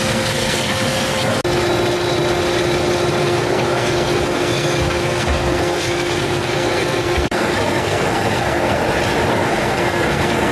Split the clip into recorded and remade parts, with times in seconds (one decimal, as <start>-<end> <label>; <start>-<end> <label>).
0.0-1.3 remade; 1.3-3.2 recorded; 3.2-8.8 remade; 8.8-9.3 recorded; 9.3-10.5 remade